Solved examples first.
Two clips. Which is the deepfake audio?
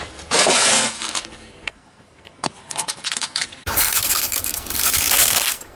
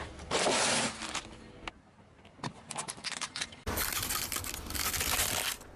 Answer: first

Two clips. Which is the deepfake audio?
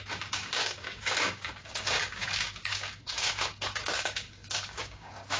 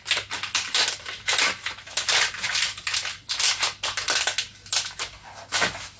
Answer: first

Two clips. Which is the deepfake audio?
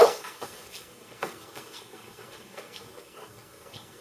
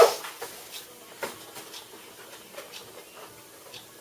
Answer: first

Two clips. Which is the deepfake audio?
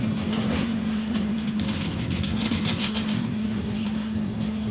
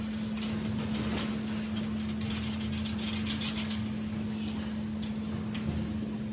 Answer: first